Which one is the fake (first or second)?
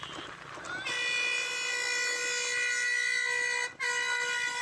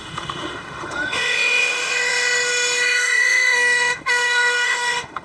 second